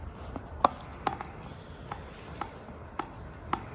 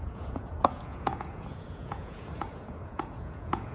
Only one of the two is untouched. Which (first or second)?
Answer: first